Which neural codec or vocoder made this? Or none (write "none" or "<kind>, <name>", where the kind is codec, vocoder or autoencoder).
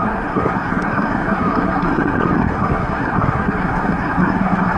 codec, SNAC